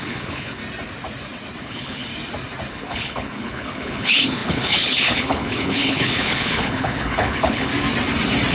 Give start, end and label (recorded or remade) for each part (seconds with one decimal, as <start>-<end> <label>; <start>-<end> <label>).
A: 0.0-0.6 remade; 0.6-1.6 recorded; 1.6-2.1 remade; 2.1-2.7 recorded; 2.7-7.7 remade; 7.7-8.5 recorded